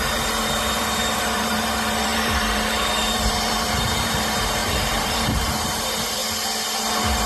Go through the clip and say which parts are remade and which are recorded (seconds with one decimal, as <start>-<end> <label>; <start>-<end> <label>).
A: 0.0-6.2 remade; 6.2-7.3 recorded